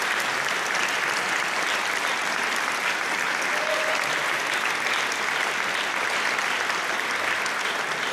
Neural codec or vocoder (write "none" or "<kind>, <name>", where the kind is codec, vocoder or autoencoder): none